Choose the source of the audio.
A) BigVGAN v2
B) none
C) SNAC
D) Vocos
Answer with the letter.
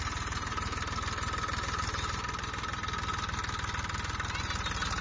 B